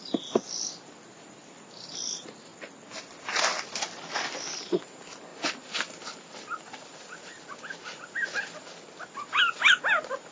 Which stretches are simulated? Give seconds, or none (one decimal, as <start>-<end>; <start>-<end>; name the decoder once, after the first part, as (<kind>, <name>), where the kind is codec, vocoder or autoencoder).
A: none